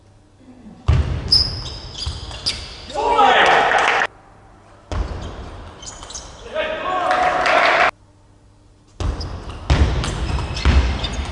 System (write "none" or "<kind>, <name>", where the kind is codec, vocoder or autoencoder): none